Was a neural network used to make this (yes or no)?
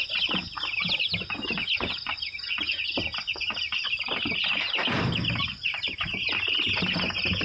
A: no